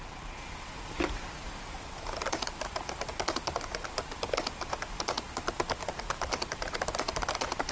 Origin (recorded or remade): recorded